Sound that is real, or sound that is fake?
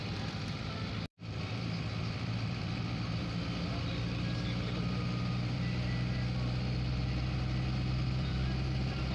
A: fake